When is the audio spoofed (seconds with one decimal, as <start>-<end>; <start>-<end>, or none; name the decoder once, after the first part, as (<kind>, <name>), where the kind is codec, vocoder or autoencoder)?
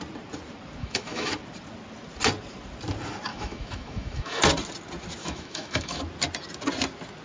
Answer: 0.8-1.3 (autoencoder, DAC-VAE); 3.3-4.4; 5.2-6.0